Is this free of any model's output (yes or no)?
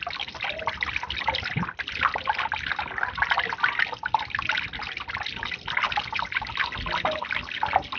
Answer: yes